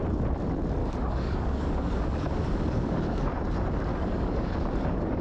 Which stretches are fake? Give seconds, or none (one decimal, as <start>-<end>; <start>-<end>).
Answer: 0.8-3.3; 3.9-5.2